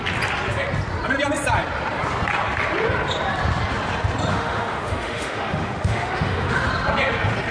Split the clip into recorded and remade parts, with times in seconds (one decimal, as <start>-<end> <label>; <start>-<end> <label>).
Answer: 0.0-4.3 recorded; 4.3-6.7 remade; 6.7-7.5 recorded